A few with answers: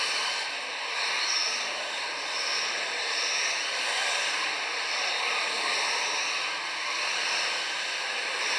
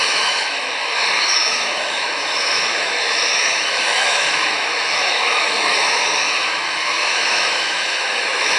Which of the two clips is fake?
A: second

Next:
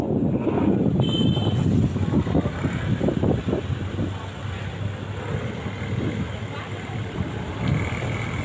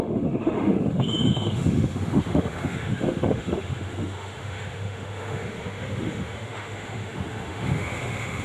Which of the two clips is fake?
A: second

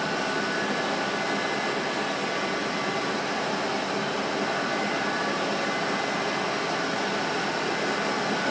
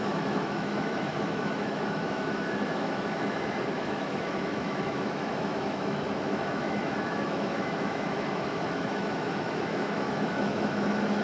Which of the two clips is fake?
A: second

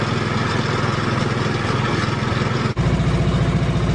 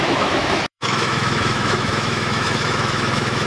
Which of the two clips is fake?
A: second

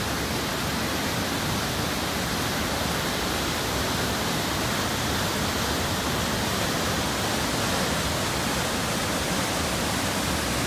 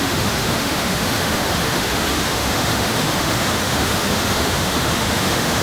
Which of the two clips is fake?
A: second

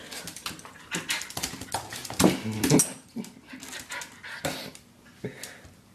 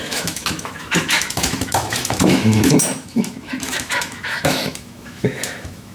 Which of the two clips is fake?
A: second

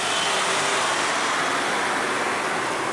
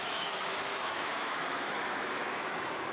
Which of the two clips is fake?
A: second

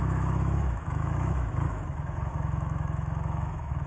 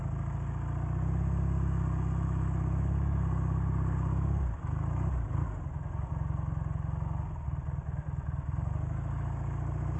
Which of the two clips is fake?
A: first